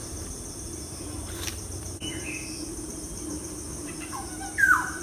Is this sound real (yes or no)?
no